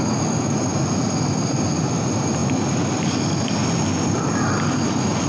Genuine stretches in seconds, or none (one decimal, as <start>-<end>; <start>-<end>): 0.0-5.3